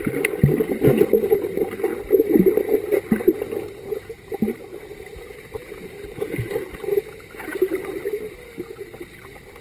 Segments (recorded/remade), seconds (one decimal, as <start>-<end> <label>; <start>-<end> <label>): 0.0-9.6 recorded